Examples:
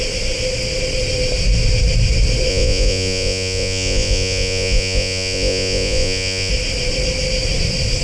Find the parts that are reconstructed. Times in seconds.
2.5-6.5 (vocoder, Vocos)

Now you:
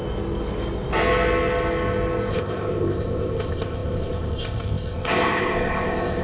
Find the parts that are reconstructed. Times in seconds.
2.3-6.2 (codec, ZipCodec)

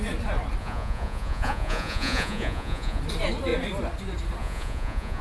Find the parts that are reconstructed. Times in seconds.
0.6-3.0 (vocoder, Vocos); 4.4-5.2

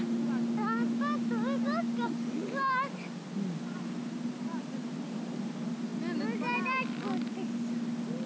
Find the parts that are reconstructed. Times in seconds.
none

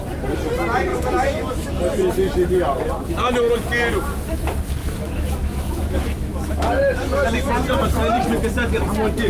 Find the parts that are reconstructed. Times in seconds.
0.9-1.8 (autoencoder, DAC-VAE); 4.8-7.5

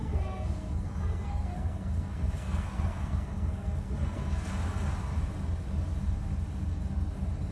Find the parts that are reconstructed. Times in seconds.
0.0-4.5 (codec, SNAC)

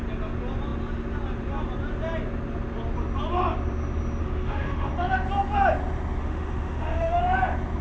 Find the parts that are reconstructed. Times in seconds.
4.2-4.9 (autoencoder, DAC-VAE); 6.2-7.2